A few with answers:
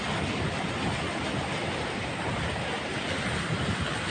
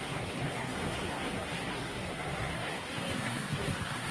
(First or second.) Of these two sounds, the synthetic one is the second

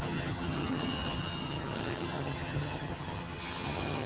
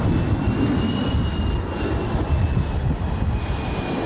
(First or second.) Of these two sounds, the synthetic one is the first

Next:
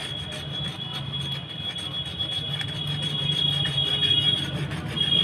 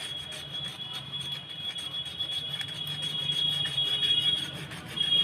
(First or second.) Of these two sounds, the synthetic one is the second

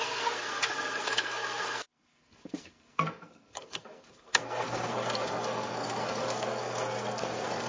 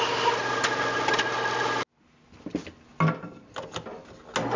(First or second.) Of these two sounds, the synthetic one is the first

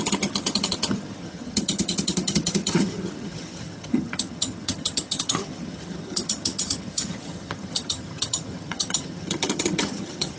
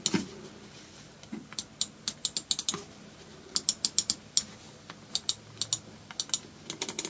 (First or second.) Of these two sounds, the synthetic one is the first